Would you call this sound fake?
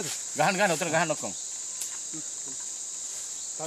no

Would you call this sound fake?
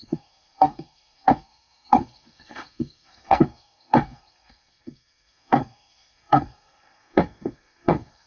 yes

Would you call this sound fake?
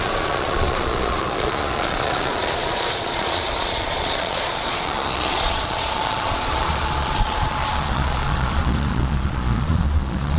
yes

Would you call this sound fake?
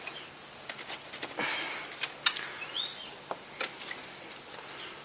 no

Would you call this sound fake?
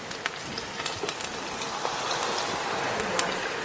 no